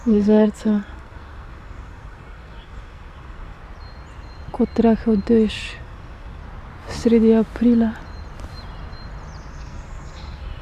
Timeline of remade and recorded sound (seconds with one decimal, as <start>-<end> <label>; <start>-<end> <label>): 0.0-3.6 remade; 3.6-5.5 recorded; 5.5-6.4 remade; 6.4-9.5 recorded; 9.5-10.6 remade